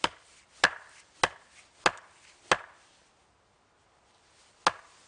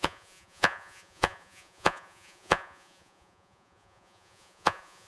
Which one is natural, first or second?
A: first